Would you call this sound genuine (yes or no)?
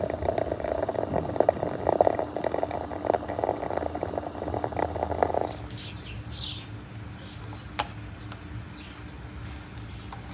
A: yes